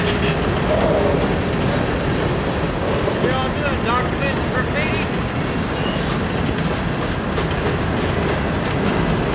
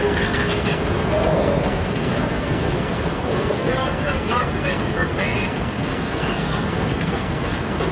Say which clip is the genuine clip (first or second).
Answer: first